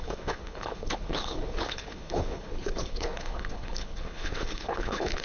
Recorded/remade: remade